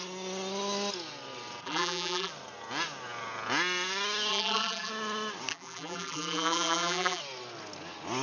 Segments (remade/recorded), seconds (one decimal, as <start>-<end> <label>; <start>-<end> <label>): 0.0-1.6 recorded; 1.6-2.3 remade; 2.3-4.3 recorded; 4.3-4.9 remade; 4.9-5.5 recorded; 5.5-7.2 remade; 7.2-8.2 recorded